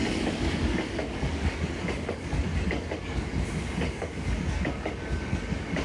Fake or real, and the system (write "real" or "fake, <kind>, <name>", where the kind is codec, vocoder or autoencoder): fake, codec, DAC